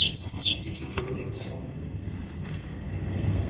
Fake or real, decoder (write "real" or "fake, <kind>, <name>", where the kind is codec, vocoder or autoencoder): fake, codec, SNAC